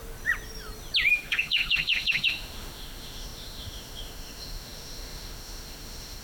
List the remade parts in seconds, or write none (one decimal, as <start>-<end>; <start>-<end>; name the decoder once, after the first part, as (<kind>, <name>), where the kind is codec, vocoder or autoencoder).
1.1-6.2 (autoencoder, DAC-VAE)